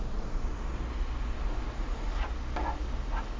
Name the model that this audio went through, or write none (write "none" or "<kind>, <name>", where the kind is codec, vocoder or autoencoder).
none